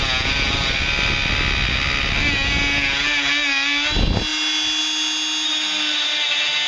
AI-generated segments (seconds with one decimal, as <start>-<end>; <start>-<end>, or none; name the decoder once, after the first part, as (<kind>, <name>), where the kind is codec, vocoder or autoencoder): none